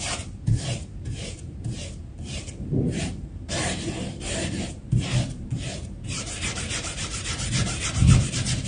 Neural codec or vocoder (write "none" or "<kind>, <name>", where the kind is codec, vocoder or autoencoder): vocoder, BigVGAN v2